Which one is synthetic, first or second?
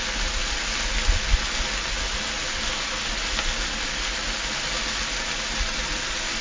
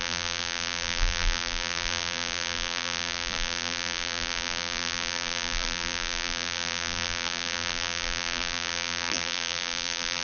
second